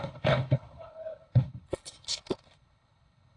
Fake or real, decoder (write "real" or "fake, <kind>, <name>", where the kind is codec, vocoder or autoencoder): fake, codec, HILCodec